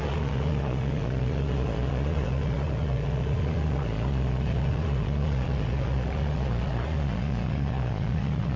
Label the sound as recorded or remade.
remade